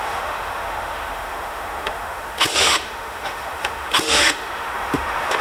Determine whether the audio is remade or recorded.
remade